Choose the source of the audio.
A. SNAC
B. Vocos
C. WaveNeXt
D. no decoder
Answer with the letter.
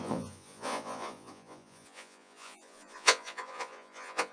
B